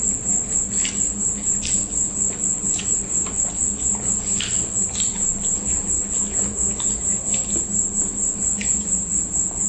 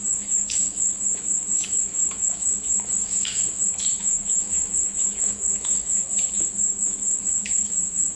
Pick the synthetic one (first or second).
second